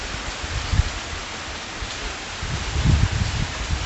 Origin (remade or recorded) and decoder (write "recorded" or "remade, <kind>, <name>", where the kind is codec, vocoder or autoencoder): recorded